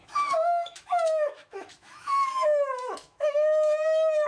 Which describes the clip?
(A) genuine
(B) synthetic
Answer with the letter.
B